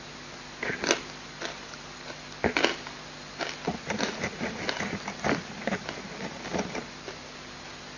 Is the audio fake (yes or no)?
no